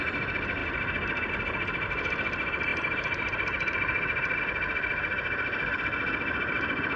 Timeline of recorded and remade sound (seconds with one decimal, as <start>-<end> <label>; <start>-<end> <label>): 0.0-7.0 recorded